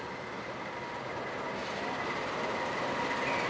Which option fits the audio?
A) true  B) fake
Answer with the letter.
A